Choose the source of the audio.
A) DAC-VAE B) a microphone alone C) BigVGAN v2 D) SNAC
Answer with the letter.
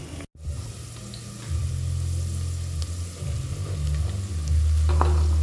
B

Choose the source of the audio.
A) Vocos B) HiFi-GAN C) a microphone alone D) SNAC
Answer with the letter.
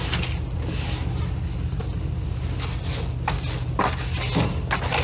C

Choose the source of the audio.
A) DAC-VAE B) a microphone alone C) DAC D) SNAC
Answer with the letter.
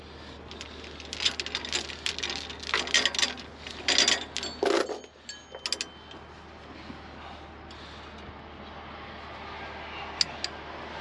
B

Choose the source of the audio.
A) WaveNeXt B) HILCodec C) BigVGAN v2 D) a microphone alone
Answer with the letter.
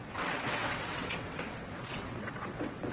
A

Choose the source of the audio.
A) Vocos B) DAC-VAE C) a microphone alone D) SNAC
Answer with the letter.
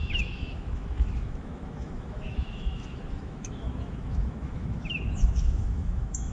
B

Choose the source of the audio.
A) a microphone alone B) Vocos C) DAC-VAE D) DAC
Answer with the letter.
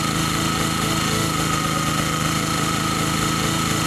C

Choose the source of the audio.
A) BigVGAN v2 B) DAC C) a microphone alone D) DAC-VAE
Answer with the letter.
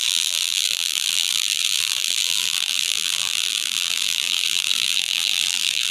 A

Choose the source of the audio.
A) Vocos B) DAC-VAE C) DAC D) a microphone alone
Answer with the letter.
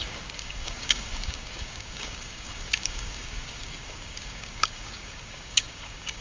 C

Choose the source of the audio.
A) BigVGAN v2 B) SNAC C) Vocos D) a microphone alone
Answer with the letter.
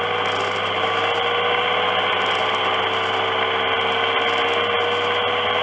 D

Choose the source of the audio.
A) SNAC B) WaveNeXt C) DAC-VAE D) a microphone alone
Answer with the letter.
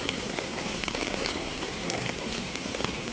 A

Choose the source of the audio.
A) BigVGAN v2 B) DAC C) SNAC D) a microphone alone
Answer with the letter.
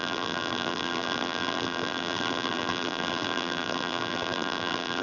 A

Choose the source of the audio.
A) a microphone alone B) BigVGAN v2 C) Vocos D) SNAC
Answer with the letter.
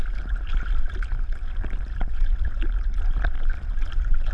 A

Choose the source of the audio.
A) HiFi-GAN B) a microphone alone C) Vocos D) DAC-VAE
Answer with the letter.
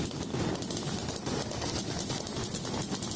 B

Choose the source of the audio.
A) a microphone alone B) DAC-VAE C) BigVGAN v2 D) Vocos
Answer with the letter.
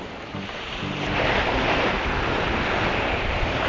A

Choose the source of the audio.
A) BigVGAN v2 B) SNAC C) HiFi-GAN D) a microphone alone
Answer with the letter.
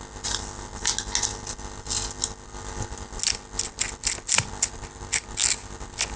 D